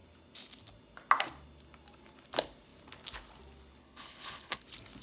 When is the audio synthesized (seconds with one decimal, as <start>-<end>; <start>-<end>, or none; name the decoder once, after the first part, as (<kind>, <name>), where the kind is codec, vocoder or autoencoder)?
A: 3.8-4.6 (codec, HILCodec)